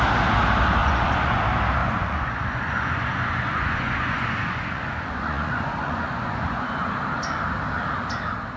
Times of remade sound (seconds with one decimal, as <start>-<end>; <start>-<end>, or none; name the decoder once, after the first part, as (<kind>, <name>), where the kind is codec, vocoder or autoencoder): 0.8-1.4 (vocoder, Vocos); 1.8-6.9